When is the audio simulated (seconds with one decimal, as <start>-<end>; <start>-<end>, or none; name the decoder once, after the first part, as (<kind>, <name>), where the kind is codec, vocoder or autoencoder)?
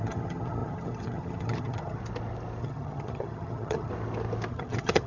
0.0-2.0 (vocoder, HiFi-GAN); 2.6-3.9; 4.5-5.1